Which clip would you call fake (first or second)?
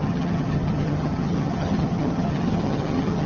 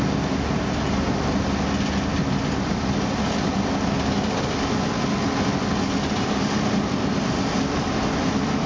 first